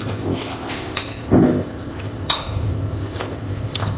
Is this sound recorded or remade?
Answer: remade